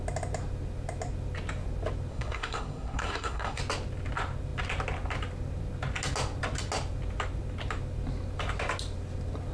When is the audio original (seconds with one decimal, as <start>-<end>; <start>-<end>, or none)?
0.0-2.1; 3.6-9.5